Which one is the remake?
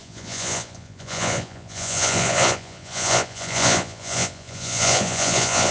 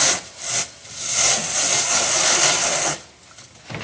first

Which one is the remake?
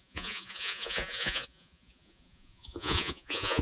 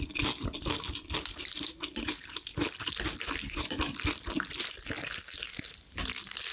first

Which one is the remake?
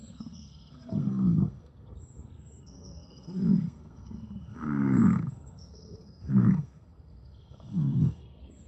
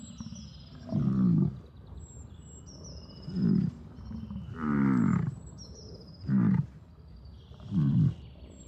first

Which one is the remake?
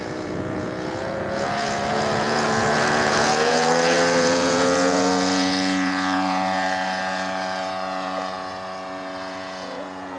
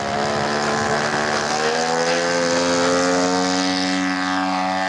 first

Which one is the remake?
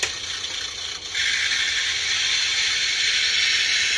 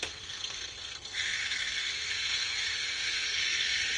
second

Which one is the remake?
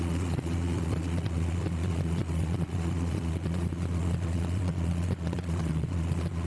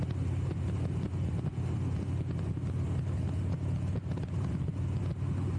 first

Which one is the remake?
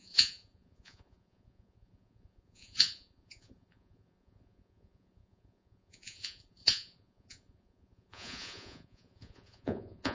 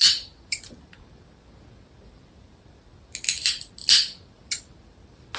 first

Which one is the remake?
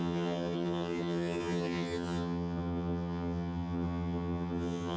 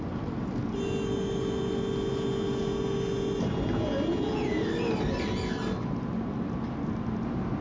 first